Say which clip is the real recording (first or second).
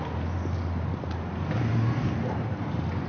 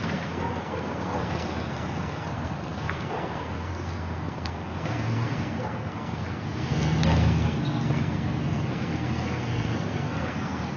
first